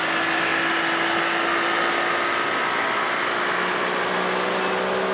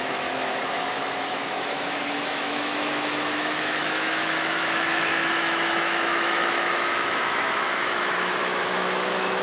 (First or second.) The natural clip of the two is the first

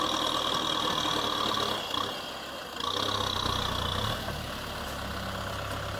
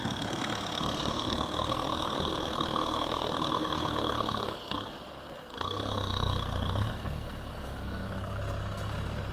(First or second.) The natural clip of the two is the first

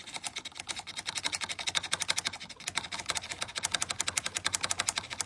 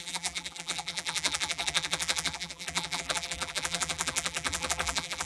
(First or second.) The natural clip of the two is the first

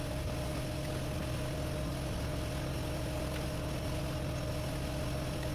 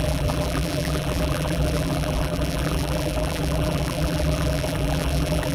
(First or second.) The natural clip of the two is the first